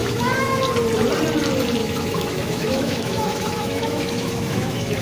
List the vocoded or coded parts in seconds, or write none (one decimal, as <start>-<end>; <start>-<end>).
0.0-0.6; 1.8-5.0